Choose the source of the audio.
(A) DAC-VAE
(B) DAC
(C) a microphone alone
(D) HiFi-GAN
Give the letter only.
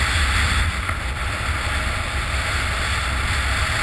C